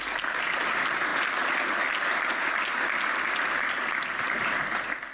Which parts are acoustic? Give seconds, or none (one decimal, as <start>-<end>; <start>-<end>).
0.0-5.1